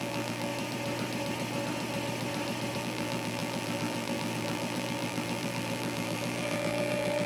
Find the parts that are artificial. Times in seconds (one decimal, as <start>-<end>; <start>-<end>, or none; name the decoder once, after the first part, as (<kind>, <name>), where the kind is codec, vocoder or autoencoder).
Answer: 0.0-0.5 (vocoder, BigVGAN v2); 2.8-7.3